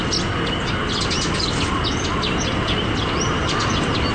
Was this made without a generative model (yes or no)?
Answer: yes